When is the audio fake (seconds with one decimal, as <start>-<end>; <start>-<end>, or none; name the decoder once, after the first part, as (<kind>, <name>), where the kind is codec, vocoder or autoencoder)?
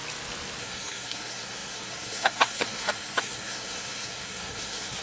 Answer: 0.6-5.0 (codec, SNAC)